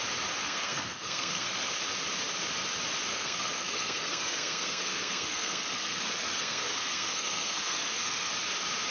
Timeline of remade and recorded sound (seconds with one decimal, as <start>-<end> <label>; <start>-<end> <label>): 0.0-0.4 recorded; 0.4-1.7 remade; 1.7-3.1 recorded; 3.1-8.3 remade; 8.3-8.9 recorded